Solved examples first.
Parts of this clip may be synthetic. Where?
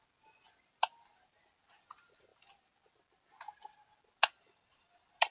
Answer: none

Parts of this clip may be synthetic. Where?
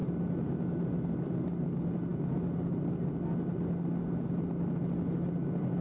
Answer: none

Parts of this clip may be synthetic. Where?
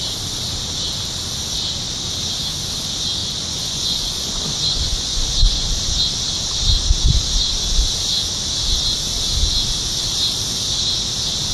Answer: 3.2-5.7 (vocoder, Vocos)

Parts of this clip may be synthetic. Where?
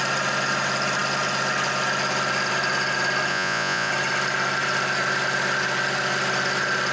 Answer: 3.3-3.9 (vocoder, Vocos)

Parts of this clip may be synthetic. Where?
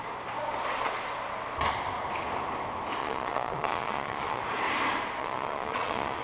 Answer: 3.0-4.4 (vocoder, Vocos); 5.2-6.2